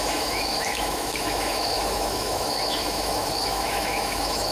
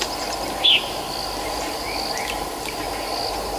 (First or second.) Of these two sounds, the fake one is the first